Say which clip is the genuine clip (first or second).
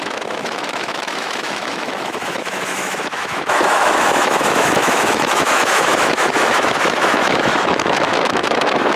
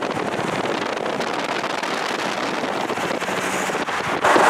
second